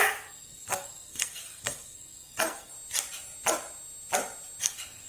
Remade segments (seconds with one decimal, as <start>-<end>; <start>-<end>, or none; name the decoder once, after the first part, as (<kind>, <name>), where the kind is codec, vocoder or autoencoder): 0.0-2.7 (codec, SNAC); 4.6-5.1